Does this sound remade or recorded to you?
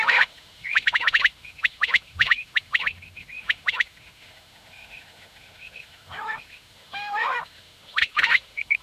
remade